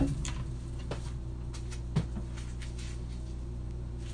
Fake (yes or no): no